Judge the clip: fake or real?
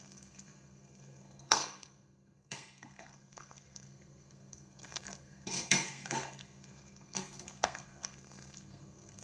fake